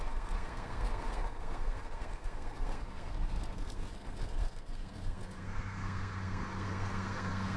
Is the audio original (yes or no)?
no